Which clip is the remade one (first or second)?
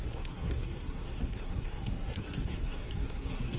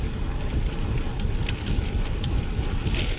first